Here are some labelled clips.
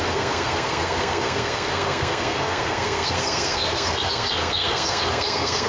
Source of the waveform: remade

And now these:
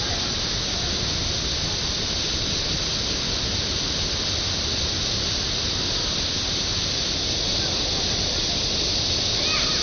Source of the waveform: recorded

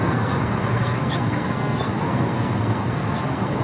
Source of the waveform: remade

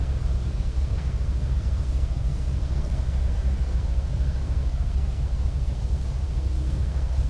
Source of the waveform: remade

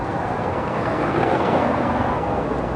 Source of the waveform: remade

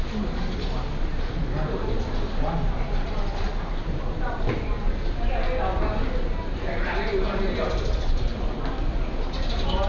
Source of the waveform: recorded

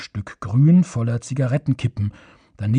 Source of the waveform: recorded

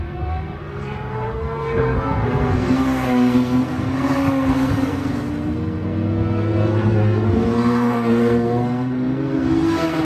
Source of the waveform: remade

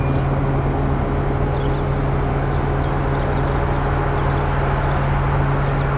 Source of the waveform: recorded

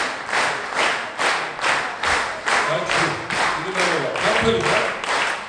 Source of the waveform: recorded